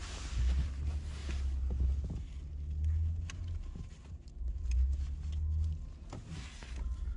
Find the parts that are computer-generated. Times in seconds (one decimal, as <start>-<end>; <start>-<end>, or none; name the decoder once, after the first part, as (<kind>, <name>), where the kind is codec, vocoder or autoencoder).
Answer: none